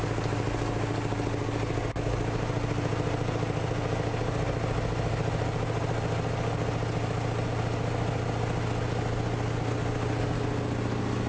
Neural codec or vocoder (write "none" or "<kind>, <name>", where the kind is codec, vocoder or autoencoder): none